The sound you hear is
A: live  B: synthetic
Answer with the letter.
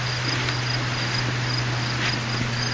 A